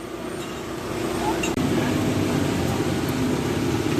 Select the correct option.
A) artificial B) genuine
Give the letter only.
B